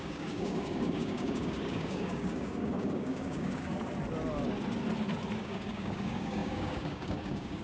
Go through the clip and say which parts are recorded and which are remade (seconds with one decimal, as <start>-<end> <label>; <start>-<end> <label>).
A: 0.0-3.7 remade; 3.7-5.4 recorded; 5.4-7.6 remade